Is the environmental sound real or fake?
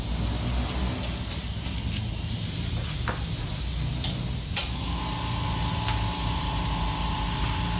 real